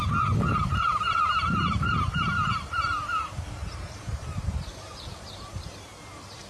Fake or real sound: fake